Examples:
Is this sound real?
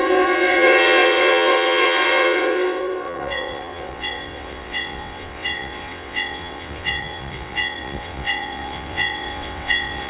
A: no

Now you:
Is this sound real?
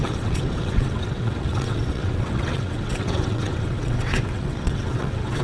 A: no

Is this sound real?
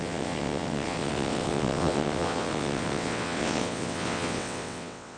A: no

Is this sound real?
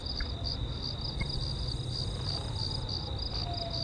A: yes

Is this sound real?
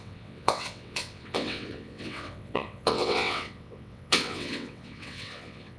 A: no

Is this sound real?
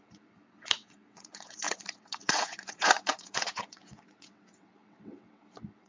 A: no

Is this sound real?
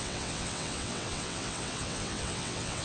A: no